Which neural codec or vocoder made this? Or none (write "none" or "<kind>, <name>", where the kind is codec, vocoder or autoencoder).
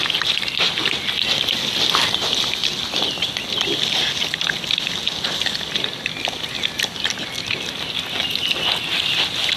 none